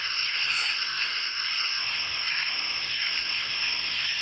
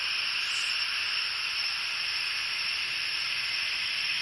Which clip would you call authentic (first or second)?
second